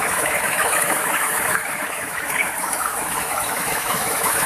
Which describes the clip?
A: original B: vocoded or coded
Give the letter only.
B